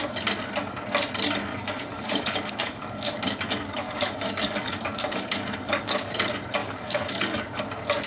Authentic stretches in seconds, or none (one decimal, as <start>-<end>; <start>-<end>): 0.0-1.5; 6.1-6.6; 7.6-8.1